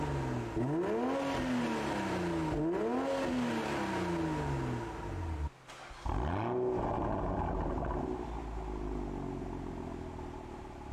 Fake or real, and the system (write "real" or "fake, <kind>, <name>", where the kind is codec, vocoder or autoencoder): real